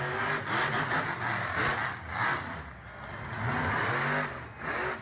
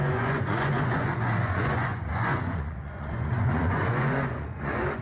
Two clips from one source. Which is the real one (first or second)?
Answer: first